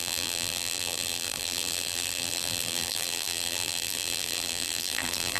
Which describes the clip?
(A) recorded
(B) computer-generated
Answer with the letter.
B